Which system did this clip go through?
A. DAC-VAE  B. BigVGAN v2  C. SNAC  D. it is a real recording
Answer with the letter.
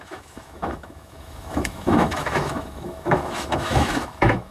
A